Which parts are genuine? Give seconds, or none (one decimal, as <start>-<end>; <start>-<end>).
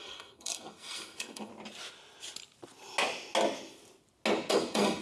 1.5-4.5